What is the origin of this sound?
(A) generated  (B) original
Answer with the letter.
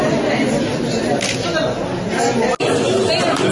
B